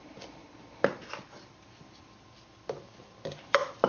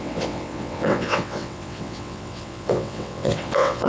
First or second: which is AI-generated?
second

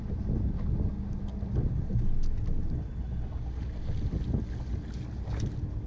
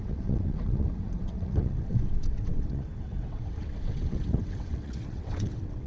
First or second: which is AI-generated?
second